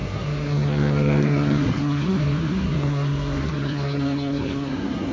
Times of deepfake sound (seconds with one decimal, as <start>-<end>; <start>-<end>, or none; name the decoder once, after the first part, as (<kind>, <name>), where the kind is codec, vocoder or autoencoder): 0.0-5.1 (codec, SNAC)